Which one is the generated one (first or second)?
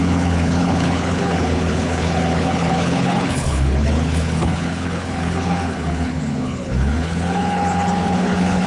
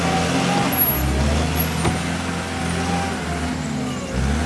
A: first